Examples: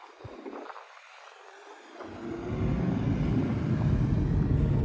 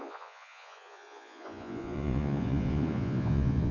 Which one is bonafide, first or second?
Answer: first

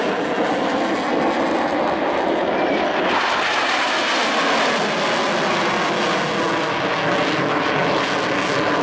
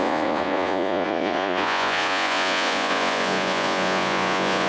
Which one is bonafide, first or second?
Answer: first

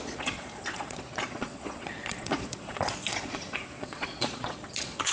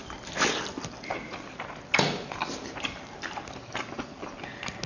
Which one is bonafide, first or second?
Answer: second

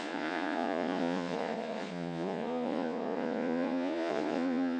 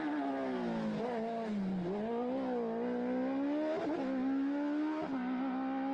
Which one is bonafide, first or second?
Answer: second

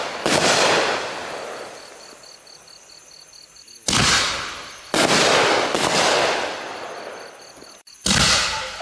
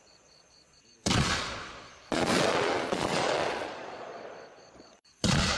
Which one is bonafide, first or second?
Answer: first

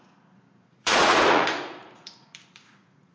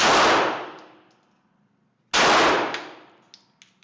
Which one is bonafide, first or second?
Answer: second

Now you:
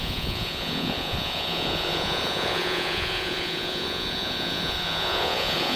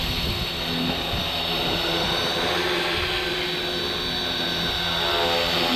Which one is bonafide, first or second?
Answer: second